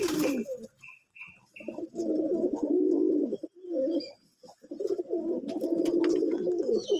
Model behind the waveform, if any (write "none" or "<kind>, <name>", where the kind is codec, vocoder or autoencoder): none